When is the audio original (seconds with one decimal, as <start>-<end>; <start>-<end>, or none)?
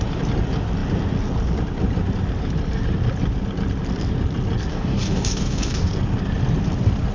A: 0.0-4.7; 5.9-7.1